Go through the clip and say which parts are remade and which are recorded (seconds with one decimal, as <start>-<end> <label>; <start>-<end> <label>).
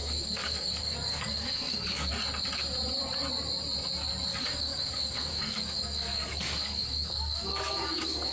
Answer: 0.0-2.1 remade; 2.1-4.3 recorded; 4.3-8.3 remade